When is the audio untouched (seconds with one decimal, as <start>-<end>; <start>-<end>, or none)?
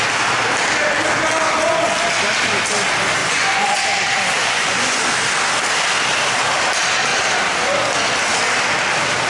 0.0-3.2; 3.8-4.4; 5.0-9.3